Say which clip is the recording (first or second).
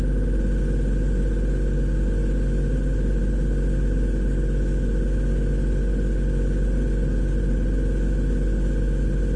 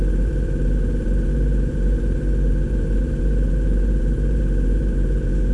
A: first